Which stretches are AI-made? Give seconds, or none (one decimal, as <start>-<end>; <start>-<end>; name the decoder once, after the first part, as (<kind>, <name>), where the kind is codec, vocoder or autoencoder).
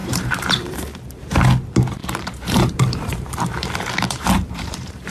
0.0-1.0 (vocoder, BigVGAN v2); 2.0-5.1